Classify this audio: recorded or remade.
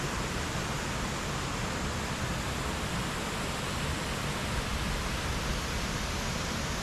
recorded